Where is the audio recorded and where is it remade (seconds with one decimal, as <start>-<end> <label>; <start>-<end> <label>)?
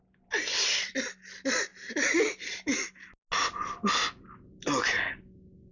0.0-5.7 recorded